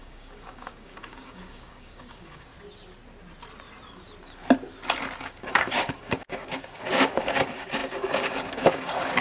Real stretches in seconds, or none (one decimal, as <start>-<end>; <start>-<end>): 2.5-5.2